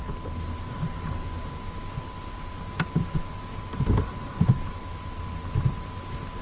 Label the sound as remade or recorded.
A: recorded